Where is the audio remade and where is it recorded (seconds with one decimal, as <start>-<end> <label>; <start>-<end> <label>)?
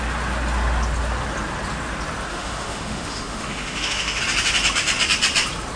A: 0.0-2.3 recorded; 2.3-4.2 remade; 4.2-5.8 recorded